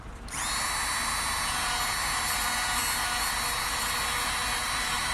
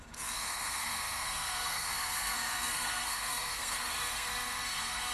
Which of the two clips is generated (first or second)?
second